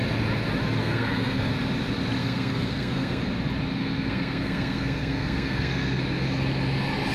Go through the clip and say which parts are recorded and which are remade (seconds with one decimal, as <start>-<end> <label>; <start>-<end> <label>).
0.0-0.8 recorded; 0.8-1.5 remade; 1.5-2.2 recorded; 2.2-3.2 remade; 3.2-3.7 recorded; 3.7-6.0 remade; 6.0-7.1 recorded